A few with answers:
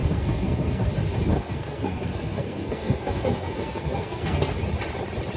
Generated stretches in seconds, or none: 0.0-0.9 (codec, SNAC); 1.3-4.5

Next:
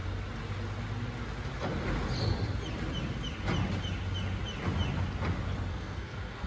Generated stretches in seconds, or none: 5.7-6.5 (codec, SNAC)

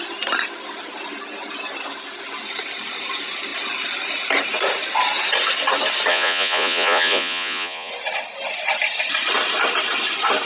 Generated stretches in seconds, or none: 6.1-7.9 (vocoder, Vocos)

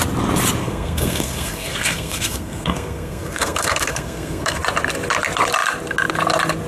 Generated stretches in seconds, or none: 0.6-4.6 (codec, SNAC)

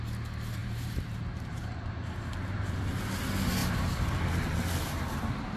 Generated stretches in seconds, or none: 0.6-3.0 (vocoder, BigVGAN v2); 3.6-4.1

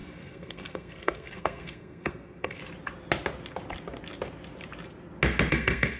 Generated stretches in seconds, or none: 0.0-2.6 (codec, SNAC); 5.5-6.0

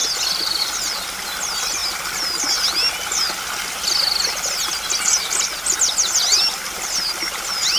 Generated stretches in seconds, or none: none